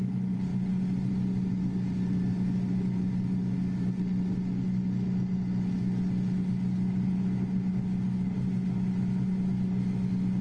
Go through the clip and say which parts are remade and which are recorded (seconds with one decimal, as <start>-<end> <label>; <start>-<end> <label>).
0.0-10.4 recorded